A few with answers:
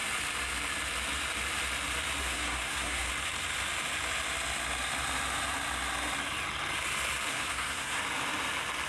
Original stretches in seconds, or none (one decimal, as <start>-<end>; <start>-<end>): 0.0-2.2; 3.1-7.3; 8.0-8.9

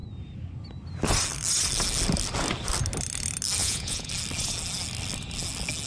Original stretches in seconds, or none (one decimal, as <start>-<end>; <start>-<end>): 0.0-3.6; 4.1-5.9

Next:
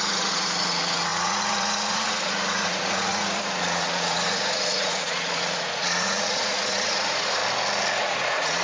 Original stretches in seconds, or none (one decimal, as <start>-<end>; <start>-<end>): 7.4-8.0